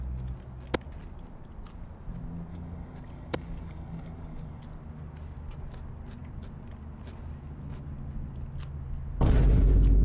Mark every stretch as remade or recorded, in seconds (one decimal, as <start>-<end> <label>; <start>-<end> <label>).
0.0-2.5 recorded; 2.5-4.6 remade; 4.6-10.0 recorded